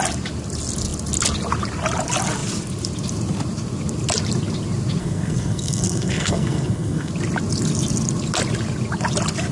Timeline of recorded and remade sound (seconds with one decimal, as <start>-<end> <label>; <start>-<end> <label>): 0.0-5.0 recorded; 5.0-7.1 remade; 7.1-9.5 recorded